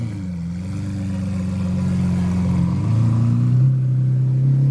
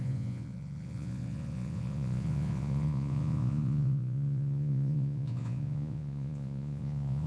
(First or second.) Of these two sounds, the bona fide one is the first